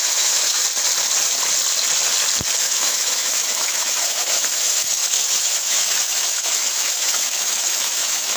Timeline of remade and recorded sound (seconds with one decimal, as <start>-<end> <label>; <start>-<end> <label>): 0.0-0.6 remade; 0.6-2.6 recorded; 2.6-8.4 remade